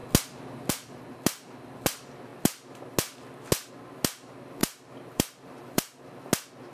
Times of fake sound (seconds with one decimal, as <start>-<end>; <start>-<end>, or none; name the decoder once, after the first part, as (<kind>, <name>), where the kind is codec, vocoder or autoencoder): 4.6-6.0 (vocoder, BigVGAN v2)

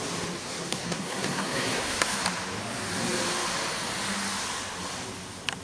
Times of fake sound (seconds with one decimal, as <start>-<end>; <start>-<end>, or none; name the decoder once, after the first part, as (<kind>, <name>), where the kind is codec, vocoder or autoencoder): 0.4-2.2 (codec, SNAC)